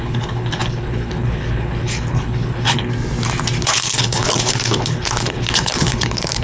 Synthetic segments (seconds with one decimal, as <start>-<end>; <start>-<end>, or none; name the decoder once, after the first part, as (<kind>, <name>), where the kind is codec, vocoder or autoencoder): 0.0-2.9 (codec, HILCodec); 3.6-6.4